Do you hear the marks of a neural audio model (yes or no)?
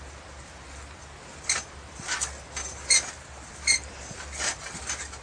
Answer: no